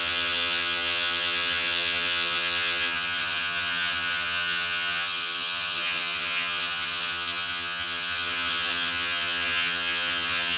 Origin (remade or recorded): remade